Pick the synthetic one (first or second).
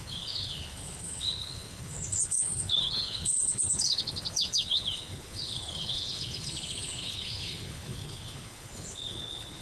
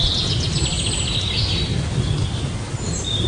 first